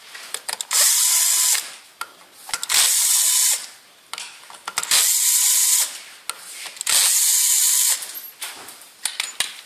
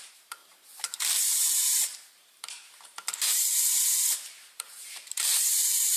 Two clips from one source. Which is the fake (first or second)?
second